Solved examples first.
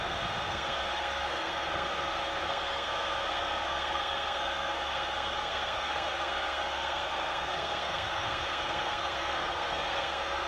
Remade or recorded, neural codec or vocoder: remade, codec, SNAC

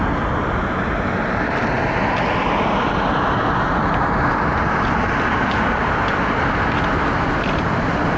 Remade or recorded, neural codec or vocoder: recorded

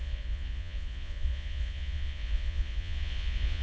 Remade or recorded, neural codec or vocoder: remade, vocoder, Vocos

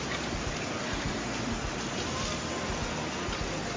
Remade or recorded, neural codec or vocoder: recorded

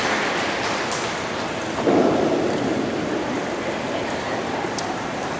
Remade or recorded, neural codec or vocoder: recorded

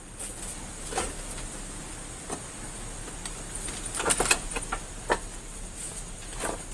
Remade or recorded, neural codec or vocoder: recorded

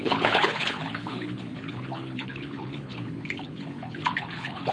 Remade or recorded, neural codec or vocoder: remade, codec, HILCodec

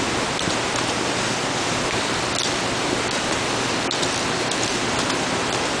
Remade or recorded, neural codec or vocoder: recorded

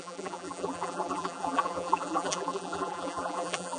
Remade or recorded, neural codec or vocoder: remade, vocoder, BigVGAN v2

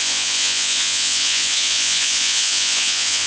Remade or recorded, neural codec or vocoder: remade, vocoder, Vocos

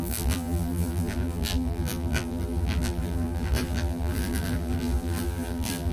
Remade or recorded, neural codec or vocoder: remade, vocoder, BigVGAN v2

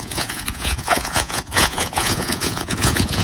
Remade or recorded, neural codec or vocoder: remade, vocoder, Vocos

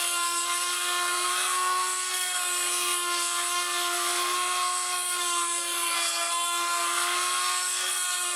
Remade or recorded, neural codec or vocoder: remade, codec, SNAC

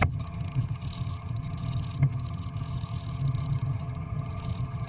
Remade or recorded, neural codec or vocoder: remade, vocoder, HiFi-GAN